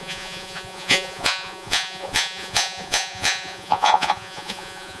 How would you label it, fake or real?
fake